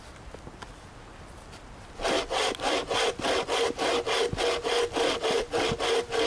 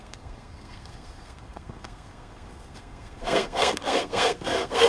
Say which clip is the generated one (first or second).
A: second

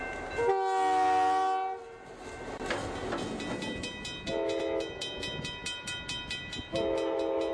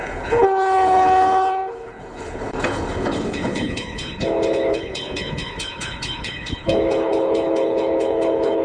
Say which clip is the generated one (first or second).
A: second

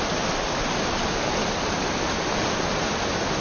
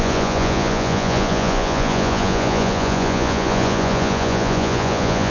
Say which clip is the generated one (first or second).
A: second